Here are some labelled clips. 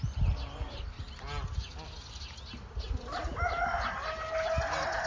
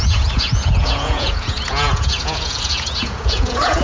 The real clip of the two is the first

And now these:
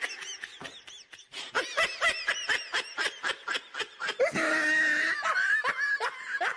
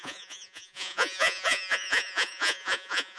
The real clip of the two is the first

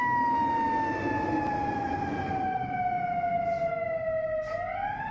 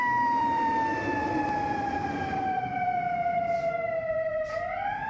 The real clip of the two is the first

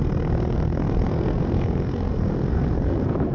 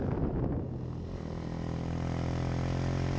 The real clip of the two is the second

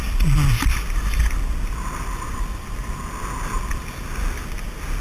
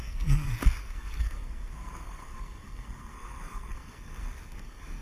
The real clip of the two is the first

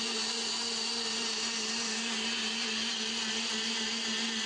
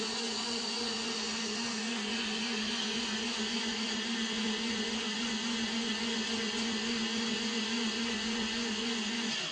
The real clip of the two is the first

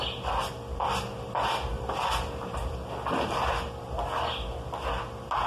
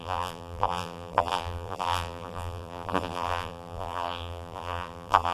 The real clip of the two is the first